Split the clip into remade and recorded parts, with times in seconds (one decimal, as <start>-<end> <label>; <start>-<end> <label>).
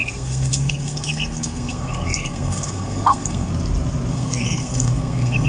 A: 0.0-3.5 remade; 3.5-4.1 recorded; 4.1-5.5 remade